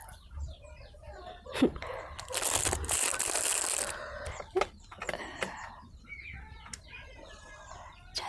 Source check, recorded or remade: recorded